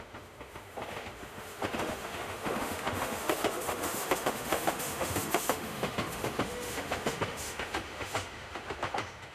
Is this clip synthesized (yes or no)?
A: yes